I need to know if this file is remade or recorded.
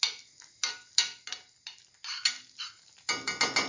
recorded